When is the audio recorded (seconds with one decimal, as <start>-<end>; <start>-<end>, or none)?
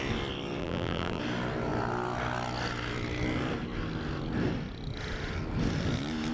0.0-0.6; 1.2-6.3